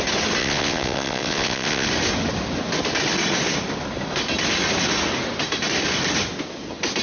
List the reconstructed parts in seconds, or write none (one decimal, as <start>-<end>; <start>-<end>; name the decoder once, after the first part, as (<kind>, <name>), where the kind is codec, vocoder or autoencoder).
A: 0.4-1.9 (vocoder, WaveNeXt)